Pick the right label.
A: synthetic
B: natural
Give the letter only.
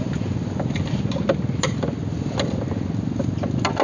B